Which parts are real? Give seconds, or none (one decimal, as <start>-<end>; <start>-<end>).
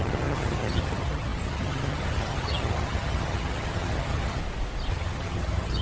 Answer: 4.4-4.9